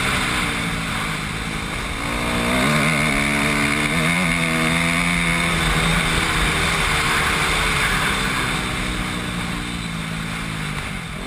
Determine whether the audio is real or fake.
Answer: real